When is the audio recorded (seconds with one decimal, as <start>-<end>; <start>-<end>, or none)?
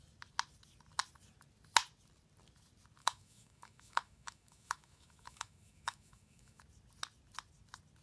0.0-3.0; 6.6-8.0